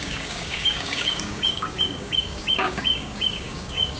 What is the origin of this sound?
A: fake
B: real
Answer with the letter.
A